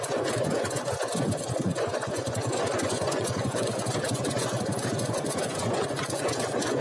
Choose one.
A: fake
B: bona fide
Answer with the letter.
A